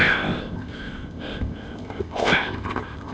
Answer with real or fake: fake